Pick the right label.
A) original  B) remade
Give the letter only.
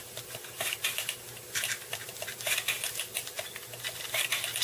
A